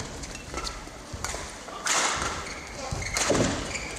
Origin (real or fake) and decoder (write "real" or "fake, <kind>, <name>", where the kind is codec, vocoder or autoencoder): real